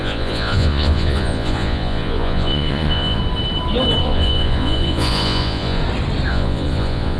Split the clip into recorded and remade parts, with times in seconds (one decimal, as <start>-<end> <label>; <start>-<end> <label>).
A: 0.0-3.2 remade; 3.2-4.0 recorded; 4.0-5.8 remade; 5.8-6.3 recorded; 6.3-7.2 remade